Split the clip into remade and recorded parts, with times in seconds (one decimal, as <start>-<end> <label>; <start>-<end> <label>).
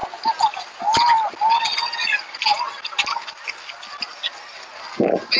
0.0-5.4 recorded